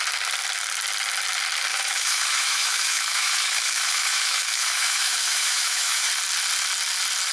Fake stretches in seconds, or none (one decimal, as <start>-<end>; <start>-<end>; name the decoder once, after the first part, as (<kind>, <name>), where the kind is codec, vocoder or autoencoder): 1.7-6.1 (autoencoder, DAC-VAE)